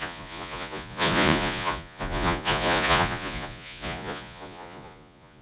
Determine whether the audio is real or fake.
fake